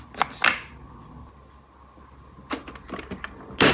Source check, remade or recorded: recorded